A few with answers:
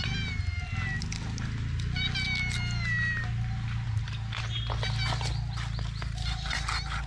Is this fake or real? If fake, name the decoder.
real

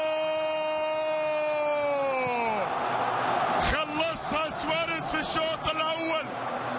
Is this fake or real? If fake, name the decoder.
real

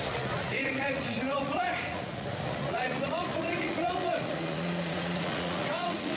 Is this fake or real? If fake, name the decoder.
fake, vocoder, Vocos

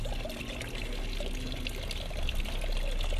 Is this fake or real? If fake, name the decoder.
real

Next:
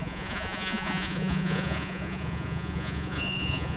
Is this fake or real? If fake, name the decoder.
fake, vocoder, Vocos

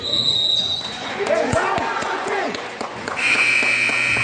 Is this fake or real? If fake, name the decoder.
fake, vocoder, Vocos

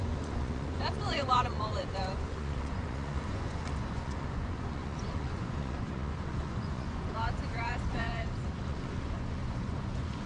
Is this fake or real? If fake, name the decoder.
fake, vocoder, Vocos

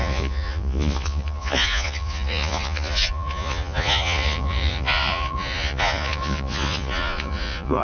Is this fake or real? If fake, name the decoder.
fake, vocoder, Vocos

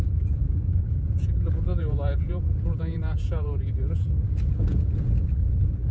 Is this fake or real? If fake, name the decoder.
fake, vocoder, Vocos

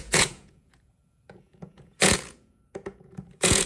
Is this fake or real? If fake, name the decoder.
fake, vocoder, Vocos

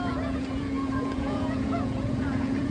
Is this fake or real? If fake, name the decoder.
fake, vocoder, Vocos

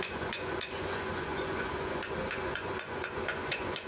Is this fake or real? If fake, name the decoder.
fake, vocoder, Vocos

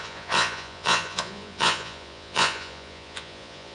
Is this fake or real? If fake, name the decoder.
fake, vocoder, Vocos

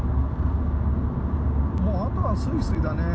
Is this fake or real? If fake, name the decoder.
real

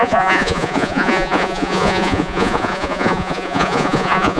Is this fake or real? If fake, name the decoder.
fake, vocoder, Vocos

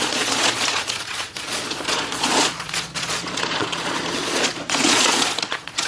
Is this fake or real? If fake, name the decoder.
fake, vocoder, Vocos